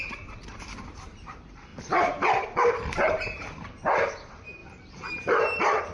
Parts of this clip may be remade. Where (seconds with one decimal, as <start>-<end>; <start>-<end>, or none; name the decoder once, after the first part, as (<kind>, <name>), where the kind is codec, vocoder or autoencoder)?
0.0-1.7 (vocoder, BigVGAN v2); 2.6-5.9